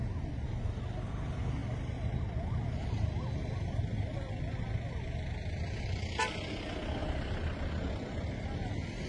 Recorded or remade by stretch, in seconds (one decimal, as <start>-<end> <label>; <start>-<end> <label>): 0.0-9.1 recorded